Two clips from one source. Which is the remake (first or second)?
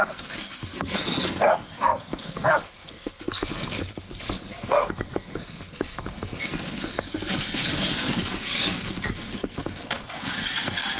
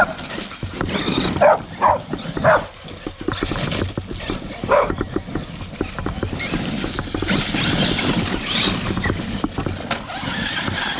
first